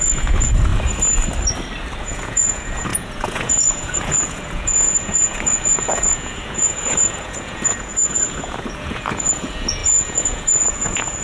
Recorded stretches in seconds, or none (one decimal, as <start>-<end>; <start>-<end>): 0.7-2.0